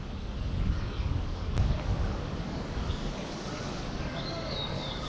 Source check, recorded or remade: remade